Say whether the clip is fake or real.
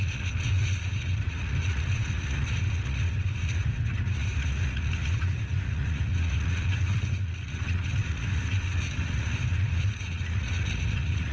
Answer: fake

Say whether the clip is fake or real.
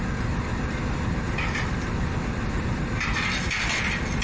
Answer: real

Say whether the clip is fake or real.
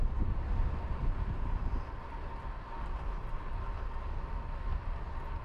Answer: real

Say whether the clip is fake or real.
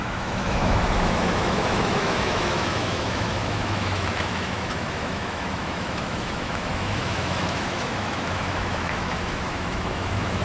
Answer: fake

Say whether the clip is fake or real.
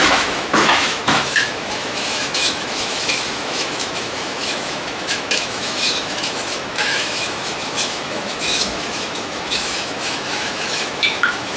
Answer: fake